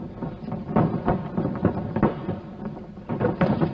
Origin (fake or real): fake